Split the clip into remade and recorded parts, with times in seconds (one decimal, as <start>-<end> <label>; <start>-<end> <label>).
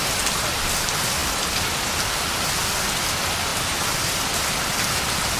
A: 0.0-5.4 recorded